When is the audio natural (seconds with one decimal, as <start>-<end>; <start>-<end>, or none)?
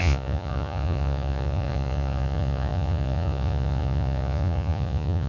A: none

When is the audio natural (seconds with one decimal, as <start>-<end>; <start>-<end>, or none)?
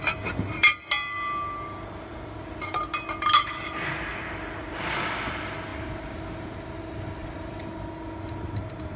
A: 0.0-2.1; 2.9-9.0